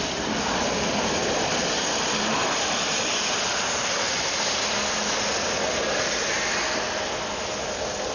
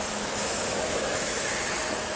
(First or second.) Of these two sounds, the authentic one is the first